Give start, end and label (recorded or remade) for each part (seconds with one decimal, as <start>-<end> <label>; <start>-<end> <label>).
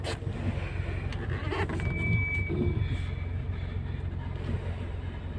0.0-5.4 recorded